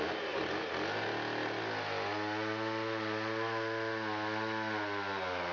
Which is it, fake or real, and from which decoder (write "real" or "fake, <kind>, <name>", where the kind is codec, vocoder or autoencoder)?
real